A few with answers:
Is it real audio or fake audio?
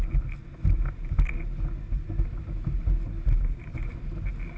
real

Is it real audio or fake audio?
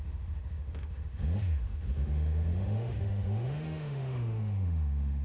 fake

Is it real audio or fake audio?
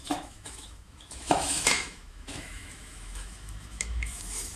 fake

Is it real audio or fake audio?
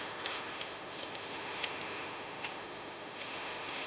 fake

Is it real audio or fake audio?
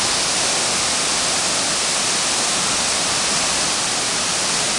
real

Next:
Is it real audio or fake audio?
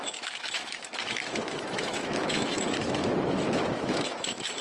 fake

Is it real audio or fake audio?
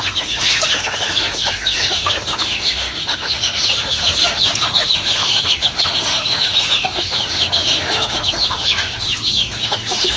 fake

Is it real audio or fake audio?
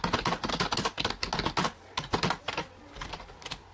real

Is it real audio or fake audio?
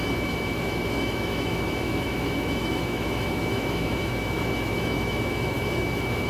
fake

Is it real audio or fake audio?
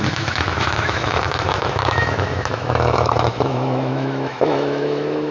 fake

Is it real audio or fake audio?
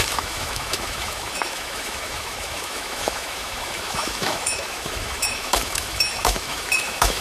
fake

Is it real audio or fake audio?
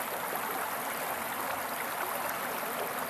real